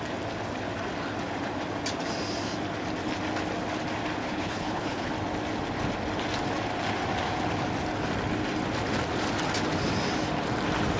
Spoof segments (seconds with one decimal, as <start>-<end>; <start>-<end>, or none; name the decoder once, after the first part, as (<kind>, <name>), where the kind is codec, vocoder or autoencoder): 4.2-5.1 (codec, HILCodec)

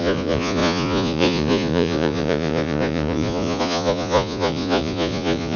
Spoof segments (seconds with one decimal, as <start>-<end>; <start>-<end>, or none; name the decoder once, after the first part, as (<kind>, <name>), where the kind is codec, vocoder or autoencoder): 0.0-5.6 (vocoder, Vocos)

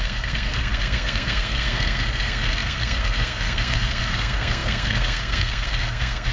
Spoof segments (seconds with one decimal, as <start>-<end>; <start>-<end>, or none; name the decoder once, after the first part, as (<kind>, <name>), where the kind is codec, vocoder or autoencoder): 0.0-6.3 (codec, SNAC)

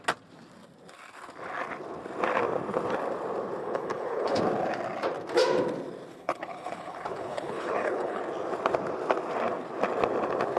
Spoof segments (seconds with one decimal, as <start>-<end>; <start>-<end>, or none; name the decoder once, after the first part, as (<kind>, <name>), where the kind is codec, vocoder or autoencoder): 3.6-4.4 (codec, HILCodec); 6.1-8.2